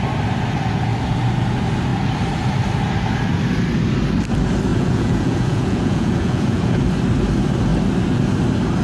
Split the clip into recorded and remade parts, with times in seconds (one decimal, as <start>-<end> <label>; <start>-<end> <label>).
0.0-4.7 recorded; 4.7-6.8 remade; 6.8-8.8 recorded